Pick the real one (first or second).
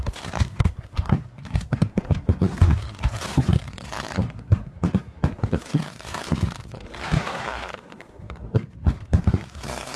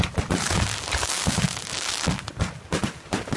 second